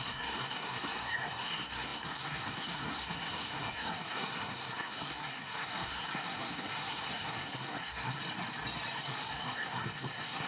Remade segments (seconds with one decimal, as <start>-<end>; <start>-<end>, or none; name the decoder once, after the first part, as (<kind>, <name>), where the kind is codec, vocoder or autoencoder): 0.0-8.2 (codec, SNAC); 9.0-10.5